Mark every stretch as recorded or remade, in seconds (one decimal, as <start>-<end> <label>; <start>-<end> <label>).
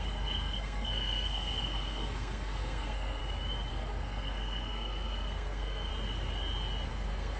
0.0-3.2 remade; 3.2-3.7 recorded; 3.7-5.9 remade; 5.9-6.9 recorded; 6.9-7.4 remade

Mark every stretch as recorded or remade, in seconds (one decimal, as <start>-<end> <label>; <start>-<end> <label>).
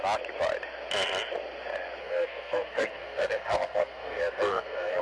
0.0-2.0 recorded; 2.0-5.0 remade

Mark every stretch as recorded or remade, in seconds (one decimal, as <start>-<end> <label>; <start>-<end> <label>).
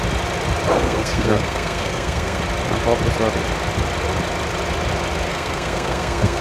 0.0-0.7 recorded; 0.7-2.4 remade; 2.4-5.3 recorded; 5.3-6.4 remade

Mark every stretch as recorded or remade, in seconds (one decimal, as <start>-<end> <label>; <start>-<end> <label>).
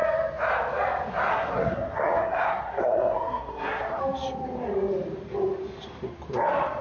0.0-1.3 recorded; 1.3-4.0 remade; 4.0-6.8 recorded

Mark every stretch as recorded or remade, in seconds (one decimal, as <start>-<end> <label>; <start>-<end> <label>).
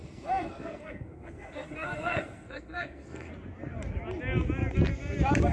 0.0-3.3 remade; 3.3-5.5 recorded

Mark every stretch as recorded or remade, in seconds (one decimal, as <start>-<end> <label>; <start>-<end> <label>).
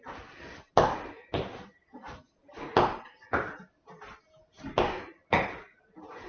0.0-6.3 recorded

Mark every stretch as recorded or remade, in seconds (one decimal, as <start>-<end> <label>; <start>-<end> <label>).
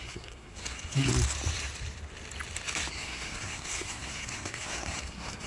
0.0-1.1 remade; 1.1-2.9 recorded; 2.9-5.5 remade